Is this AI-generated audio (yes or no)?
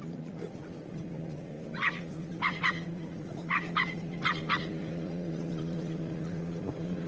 yes